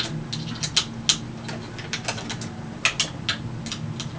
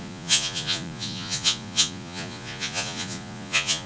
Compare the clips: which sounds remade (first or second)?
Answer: second